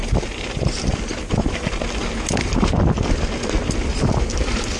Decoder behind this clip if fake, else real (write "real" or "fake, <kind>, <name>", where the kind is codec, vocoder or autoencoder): real